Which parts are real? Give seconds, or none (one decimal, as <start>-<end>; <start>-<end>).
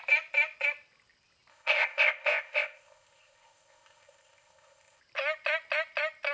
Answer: 0.0-1.5; 5.0-6.3